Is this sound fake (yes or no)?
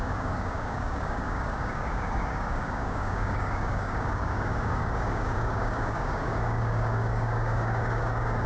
yes